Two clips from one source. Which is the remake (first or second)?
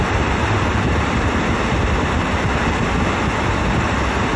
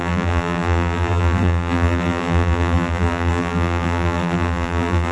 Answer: second